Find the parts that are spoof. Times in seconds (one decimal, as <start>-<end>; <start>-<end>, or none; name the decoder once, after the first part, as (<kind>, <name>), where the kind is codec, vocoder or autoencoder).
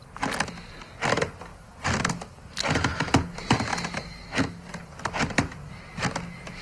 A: none